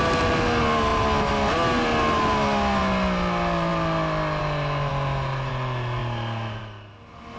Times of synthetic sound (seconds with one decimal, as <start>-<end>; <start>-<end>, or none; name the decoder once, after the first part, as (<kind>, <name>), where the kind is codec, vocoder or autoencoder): none